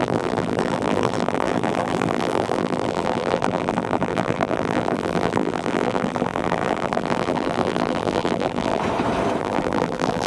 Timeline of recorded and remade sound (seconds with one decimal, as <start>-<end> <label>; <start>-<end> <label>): 0.0-8.8 remade; 8.8-9.4 recorded; 9.4-10.3 remade